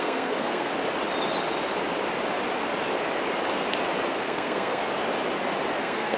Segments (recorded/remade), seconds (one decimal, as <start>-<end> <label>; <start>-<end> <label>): 0.0-0.7 remade; 0.7-4.1 recorded; 4.1-4.8 remade; 4.8-5.8 recorded; 5.8-6.2 remade